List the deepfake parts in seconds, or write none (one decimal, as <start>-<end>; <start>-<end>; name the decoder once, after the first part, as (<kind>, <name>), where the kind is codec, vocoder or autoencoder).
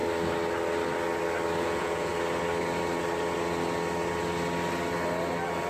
1.6-2.1 (vocoder, Vocos)